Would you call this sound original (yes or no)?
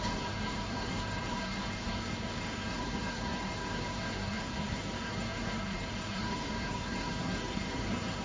no